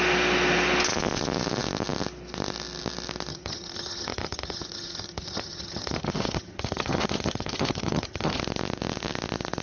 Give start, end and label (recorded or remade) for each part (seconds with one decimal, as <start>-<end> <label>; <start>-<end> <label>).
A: 0.0-3.3 recorded; 3.3-8.4 remade; 8.4-9.6 recorded